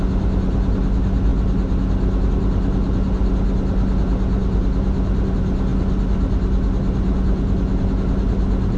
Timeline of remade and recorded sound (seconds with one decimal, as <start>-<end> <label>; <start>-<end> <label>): 0.0-8.8 recorded